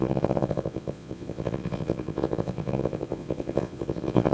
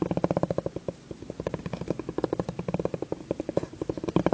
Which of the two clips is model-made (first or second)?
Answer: first